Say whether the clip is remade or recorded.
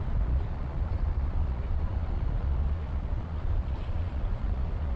remade